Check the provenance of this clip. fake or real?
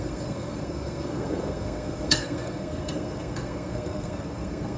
fake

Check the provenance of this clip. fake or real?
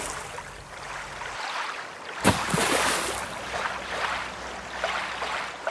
real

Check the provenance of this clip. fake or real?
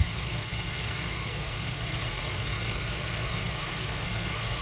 fake